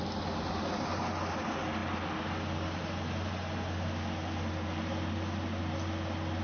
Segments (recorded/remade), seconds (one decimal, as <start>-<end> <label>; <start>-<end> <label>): 0.0-6.4 recorded